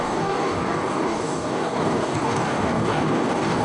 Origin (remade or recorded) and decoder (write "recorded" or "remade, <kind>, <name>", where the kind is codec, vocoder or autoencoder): remade, codec, DAC